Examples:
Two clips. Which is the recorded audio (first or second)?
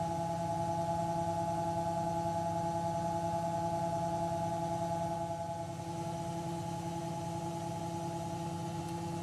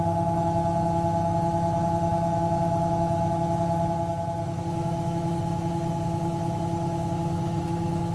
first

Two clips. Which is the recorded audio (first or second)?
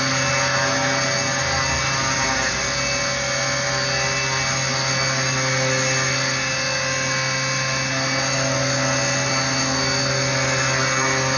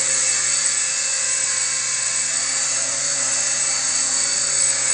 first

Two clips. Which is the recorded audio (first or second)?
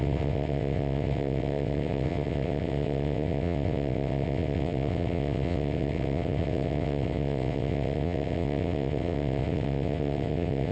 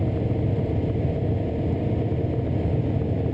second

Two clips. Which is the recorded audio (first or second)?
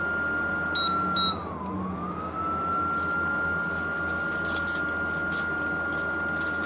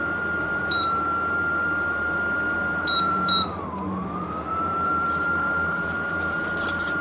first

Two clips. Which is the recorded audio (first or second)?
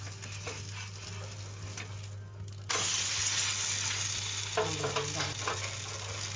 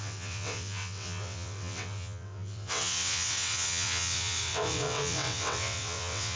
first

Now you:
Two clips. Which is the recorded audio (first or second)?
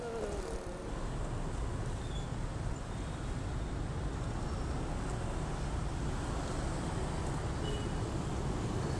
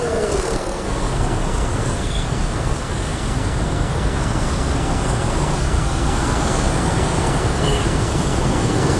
first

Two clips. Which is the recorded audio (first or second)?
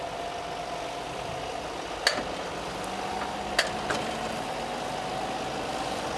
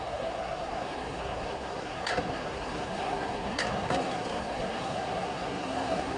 first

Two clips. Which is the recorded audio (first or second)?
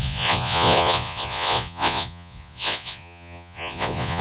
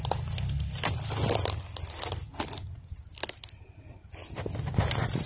second